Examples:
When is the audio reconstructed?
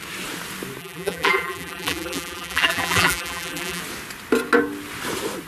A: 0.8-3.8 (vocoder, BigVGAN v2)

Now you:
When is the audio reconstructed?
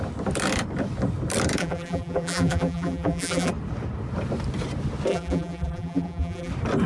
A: 1.6-3.5 (vocoder, BigVGAN v2); 5.1-6.5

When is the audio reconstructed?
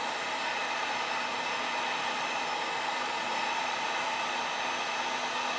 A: 0.6-1.6 (vocoder, BigVGAN v2); 2.0-4.5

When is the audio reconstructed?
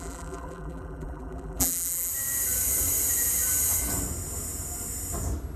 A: 0.0-2.1 (vocoder, BigVGAN v2)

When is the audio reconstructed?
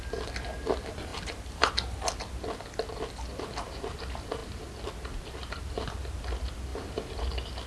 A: 1.1-1.7 (vocoder, BigVGAN v2)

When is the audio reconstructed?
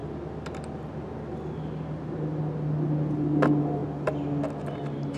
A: none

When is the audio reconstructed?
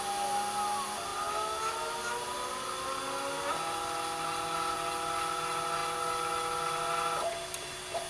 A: none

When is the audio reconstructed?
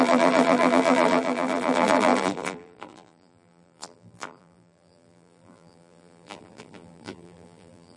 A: 0.0-8.0 (vocoder, BigVGAN v2)